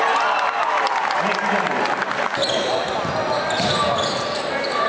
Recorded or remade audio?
recorded